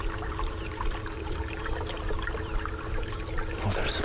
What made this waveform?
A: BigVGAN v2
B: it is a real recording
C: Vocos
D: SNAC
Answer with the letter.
A